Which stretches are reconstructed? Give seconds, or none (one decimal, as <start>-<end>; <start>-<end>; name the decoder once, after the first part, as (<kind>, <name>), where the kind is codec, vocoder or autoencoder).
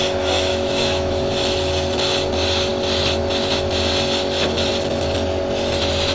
0.5-1.1 (autoencoder, DAC-VAE)